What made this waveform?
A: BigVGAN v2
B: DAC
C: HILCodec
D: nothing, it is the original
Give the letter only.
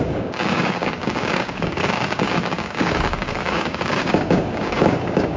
B